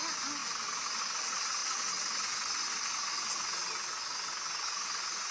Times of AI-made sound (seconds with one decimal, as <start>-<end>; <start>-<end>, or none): none